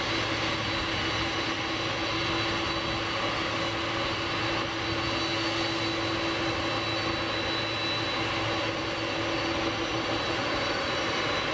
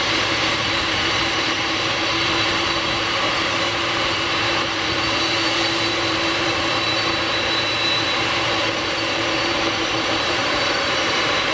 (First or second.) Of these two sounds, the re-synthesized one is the second